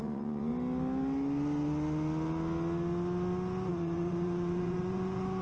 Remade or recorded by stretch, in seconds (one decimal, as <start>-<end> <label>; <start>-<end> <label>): 0.0-0.5 remade; 0.5-3.7 recorded; 3.7-5.4 remade